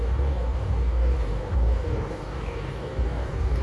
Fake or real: fake